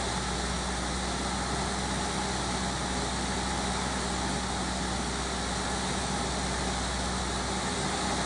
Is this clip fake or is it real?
real